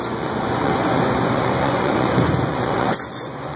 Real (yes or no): no